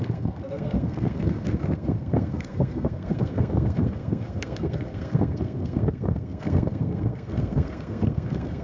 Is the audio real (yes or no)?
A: no